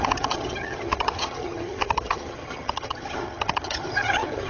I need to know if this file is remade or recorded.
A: remade